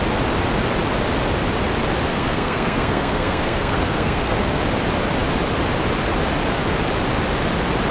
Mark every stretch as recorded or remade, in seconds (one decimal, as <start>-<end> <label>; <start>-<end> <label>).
0.0-2.1 recorded; 2.1-4.6 remade; 4.6-7.9 recorded